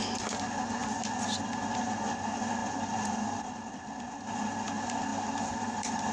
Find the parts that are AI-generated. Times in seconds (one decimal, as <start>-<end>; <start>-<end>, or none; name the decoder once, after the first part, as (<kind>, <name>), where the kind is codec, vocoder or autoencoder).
0.8-1.8 (vocoder, BigVGAN v2); 2.6-3.4; 5.1-6.1